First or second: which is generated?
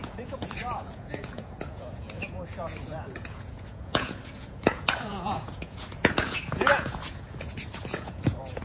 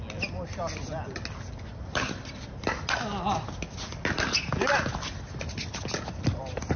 first